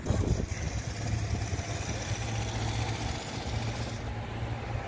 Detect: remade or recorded recorded